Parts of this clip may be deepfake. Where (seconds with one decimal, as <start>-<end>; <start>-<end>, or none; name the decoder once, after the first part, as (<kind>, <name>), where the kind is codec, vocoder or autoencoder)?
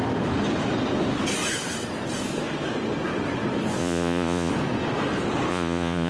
3.8-4.5 (vocoder, Vocos); 5.5-6.1